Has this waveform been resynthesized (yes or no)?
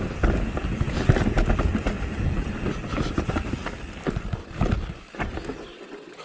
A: no